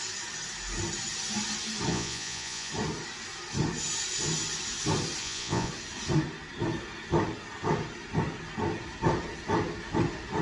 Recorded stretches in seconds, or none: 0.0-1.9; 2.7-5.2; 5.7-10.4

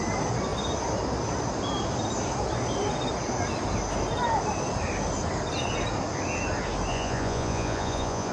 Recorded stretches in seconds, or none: 0.0-6.9

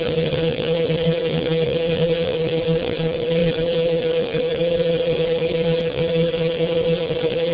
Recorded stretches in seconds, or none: none

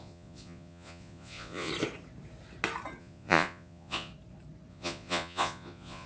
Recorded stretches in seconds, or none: 1.7-3.0; 4.1-4.7

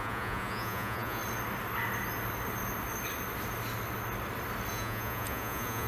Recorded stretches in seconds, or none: 1.2-4.7